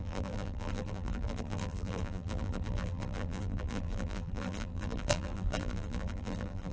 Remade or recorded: remade